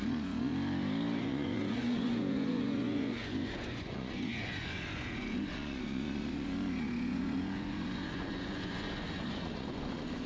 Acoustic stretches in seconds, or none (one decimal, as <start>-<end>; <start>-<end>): 0.5-1.2